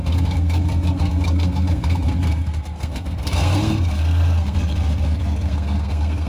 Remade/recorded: remade